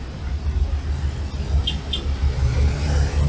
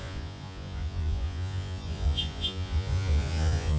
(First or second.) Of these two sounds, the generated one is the second